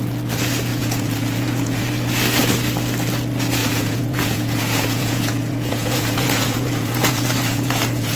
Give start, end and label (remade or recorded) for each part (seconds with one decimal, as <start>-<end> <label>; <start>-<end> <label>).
0.0-0.7 recorded; 0.7-1.8 remade; 1.8-3.6 recorded; 3.6-8.2 remade